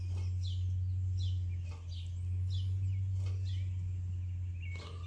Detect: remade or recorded recorded